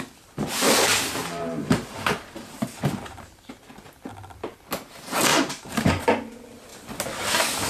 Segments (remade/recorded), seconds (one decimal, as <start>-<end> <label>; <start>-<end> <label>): 0.0-1.2 recorded; 1.2-3.5 remade; 3.5-5.3 recorded; 5.3-5.9 remade; 5.9-7.7 recorded